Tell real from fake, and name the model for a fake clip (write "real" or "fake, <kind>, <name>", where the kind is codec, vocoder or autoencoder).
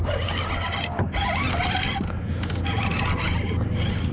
real